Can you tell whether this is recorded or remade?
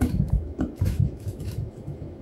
remade